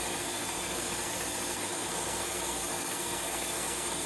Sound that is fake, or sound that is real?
fake